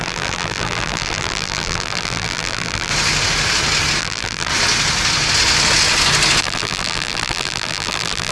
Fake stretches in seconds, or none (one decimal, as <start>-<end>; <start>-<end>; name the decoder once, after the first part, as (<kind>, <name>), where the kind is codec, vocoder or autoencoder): 0.0-2.9 (vocoder, BigVGAN v2); 4.0-4.5; 6.4-8.3

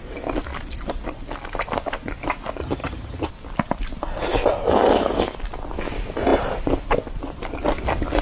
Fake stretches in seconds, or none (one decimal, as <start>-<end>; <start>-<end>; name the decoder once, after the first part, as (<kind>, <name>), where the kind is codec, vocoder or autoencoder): 2.6-3.3 (vocoder, HiFi-GAN)

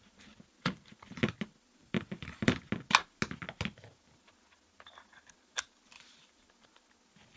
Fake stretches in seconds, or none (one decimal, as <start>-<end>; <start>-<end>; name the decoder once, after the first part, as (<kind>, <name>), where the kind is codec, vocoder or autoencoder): 1.8-2.6 (vocoder, BigVGAN v2)

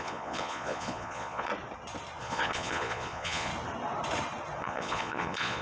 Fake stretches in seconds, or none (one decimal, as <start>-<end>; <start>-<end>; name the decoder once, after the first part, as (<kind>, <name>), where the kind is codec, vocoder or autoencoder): 0.0-1.5 (vocoder, Vocos); 2.2-3.5; 4.6-5.6

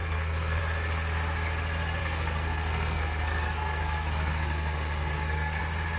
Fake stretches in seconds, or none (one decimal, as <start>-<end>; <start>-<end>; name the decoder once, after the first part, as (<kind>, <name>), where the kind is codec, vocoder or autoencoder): 0.0-0.6 (codec, SNAC); 2.0-5.6

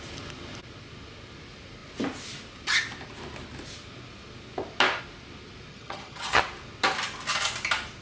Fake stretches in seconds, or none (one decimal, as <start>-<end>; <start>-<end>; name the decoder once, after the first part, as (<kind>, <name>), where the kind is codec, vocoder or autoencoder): 5.7-6.4 (vocoder, HiFi-GAN)

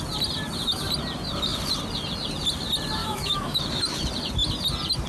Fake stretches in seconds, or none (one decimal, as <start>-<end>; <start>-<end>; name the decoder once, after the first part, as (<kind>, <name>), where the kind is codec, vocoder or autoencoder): 3.0-3.6 (autoencoder, DAC-VAE)

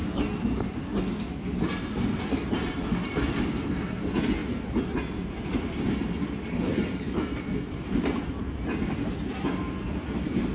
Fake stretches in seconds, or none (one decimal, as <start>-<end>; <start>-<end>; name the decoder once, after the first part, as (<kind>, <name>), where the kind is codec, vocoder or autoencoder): 2.9-10.5 (vocoder, BigVGAN v2)